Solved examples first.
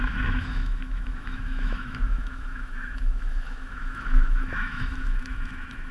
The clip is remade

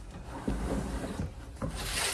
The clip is recorded